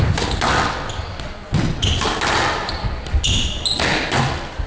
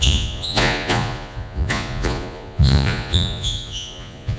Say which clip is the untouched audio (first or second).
first